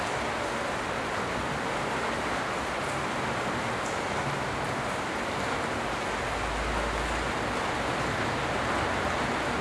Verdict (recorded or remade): recorded